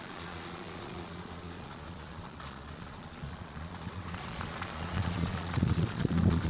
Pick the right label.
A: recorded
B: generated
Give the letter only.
B